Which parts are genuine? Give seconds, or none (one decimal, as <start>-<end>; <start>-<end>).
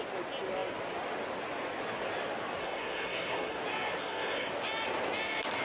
0.0-2.6; 3.6-4.0; 4.5-5.6